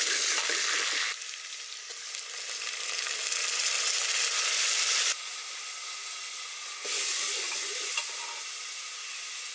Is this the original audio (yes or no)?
yes